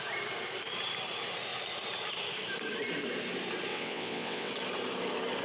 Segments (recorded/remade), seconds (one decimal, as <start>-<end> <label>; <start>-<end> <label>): 0.0-3.7 recorded; 3.7-4.5 remade; 4.5-5.4 recorded